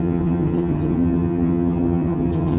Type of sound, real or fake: fake